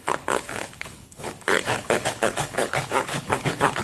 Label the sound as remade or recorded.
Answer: remade